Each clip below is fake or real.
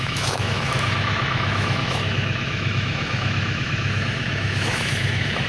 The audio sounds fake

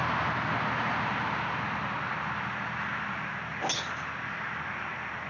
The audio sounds real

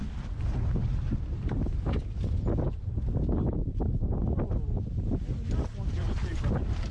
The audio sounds real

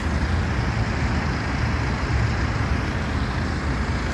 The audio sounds real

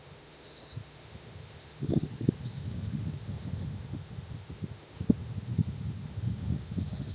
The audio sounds fake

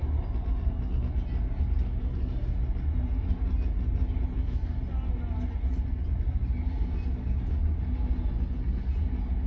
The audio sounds real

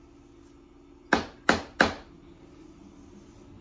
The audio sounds real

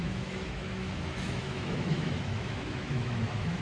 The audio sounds fake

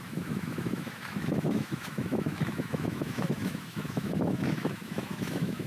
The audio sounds fake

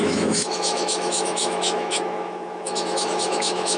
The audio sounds fake